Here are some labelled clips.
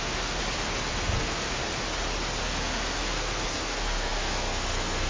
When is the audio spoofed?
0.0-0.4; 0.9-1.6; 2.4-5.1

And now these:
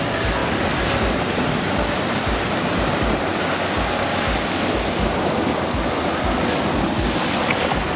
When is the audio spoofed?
none

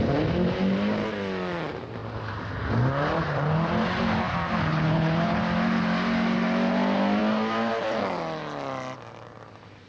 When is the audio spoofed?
4.7-5.4

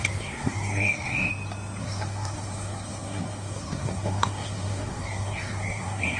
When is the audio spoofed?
0.0-1.3; 1.8-6.2

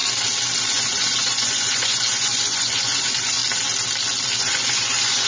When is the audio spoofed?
0.7-3.4; 4.4-5.3

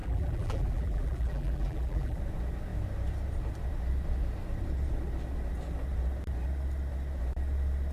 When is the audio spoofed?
0.0-2.2